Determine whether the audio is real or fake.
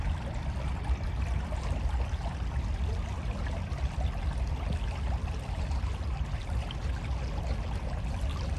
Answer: real